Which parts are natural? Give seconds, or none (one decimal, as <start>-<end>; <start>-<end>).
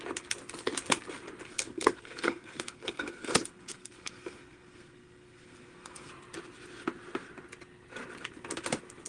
0.0-1.5; 6.1-9.1